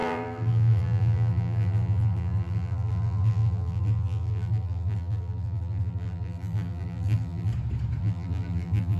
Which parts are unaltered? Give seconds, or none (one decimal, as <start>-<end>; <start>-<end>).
7.5-8.0